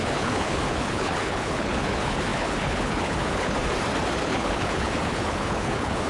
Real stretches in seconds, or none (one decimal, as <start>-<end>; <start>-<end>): 3.6-4.2